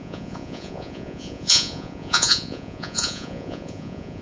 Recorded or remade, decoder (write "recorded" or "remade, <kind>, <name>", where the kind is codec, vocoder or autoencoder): remade, vocoder, Vocos